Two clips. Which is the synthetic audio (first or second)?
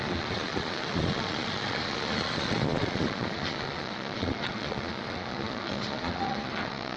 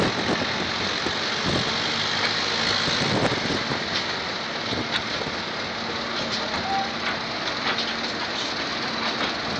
first